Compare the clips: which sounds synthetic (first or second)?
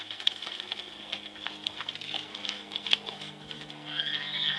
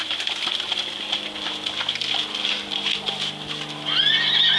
first